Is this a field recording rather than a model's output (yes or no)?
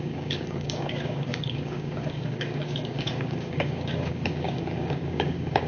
no